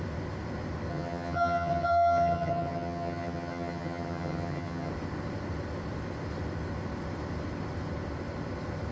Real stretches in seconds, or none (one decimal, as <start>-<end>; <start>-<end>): 0.0-0.9; 4.9-8.9